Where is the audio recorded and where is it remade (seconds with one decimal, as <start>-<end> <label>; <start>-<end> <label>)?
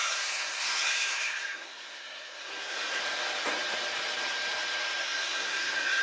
0.0-3.0 remade; 3.0-5.0 recorded; 5.0-6.0 remade